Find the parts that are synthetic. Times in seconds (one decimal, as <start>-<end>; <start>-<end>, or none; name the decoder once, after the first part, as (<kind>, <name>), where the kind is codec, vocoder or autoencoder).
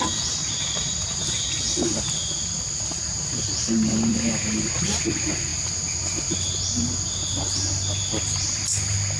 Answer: none